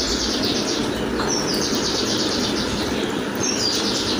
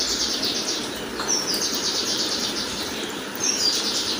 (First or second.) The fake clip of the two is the second